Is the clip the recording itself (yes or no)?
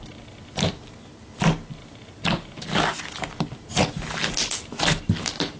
yes